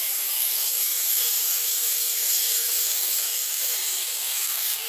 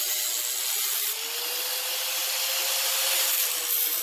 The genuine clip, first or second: second